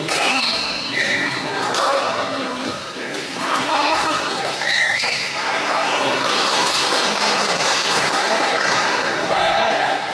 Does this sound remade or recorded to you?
remade